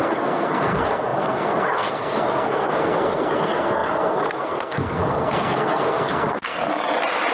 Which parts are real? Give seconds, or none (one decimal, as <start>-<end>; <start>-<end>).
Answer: 6.6-7.3